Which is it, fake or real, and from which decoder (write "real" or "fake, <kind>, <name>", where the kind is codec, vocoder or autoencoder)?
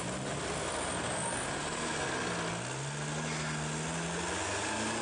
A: real